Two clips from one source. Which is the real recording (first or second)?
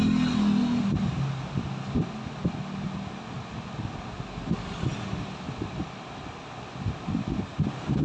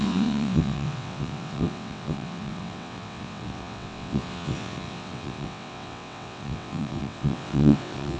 first